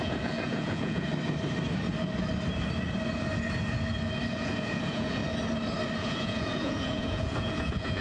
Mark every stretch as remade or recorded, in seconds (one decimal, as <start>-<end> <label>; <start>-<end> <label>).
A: 0.0-1.1 remade; 1.1-4.3 recorded; 4.3-5.2 remade; 5.2-6.0 recorded; 6.0-8.0 remade